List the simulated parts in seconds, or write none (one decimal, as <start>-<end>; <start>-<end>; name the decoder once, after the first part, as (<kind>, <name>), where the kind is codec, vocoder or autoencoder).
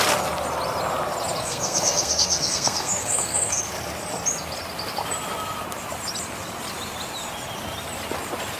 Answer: 1.4-3.6 (codec, SNAC)